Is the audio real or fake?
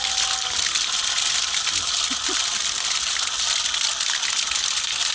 real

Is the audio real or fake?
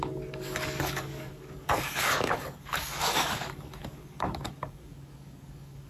fake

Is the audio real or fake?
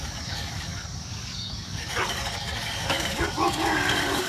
fake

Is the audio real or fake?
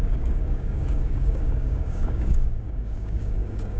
fake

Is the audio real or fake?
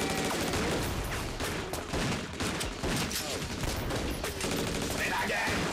real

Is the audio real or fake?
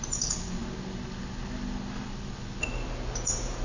real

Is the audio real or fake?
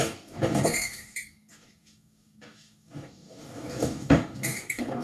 fake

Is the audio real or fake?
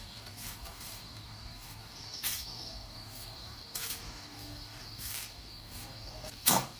fake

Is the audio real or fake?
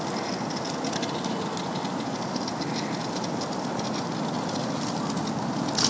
real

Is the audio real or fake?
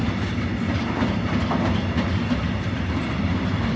real